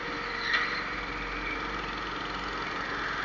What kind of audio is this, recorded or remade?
recorded